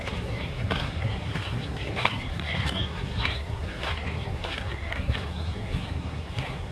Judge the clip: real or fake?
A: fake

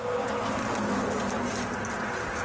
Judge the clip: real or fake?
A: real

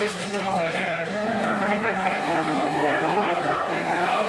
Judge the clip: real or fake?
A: fake